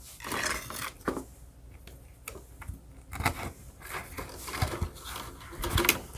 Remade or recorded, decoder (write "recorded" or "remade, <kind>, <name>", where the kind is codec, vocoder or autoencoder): recorded